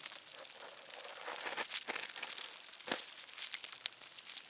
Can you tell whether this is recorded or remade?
recorded